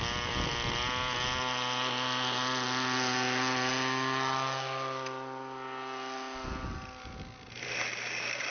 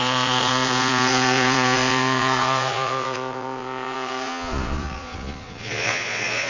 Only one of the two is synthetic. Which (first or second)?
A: second